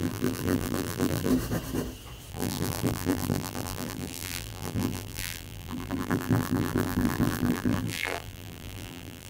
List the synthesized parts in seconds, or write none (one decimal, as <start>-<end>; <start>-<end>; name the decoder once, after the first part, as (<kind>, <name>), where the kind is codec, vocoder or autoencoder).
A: 0.0-1.3 (vocoder, BigVGAN v2); 2.3-9.3